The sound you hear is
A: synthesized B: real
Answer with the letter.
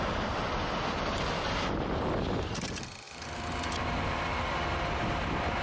B